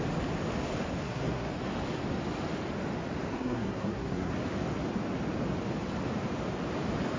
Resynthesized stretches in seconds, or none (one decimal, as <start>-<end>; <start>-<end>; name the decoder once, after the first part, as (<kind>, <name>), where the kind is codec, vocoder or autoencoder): 1.0-1.5 (codec, SNAC); 3.3-4.3